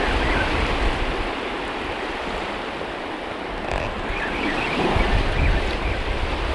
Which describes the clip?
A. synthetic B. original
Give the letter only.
B